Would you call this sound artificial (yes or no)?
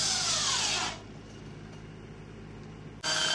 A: no